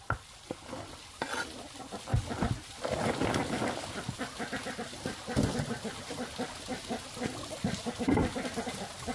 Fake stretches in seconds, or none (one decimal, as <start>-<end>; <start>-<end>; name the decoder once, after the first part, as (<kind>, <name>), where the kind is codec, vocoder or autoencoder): none